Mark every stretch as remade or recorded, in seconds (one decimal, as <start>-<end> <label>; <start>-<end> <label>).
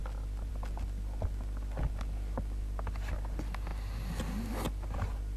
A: 0.0-5.4 recorded